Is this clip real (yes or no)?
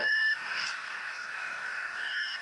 no